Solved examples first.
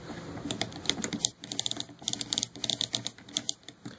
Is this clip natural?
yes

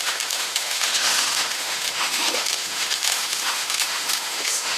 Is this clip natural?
no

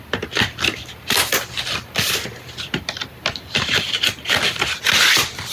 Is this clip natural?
yes